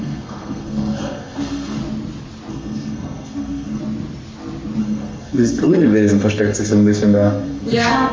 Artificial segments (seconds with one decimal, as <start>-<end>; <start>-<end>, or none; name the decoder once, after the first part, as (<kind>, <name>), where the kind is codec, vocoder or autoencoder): 0.0-1.8 (codec, SNAC); 2.5-3.8; 4.8-8.1